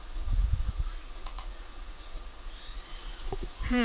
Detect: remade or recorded remade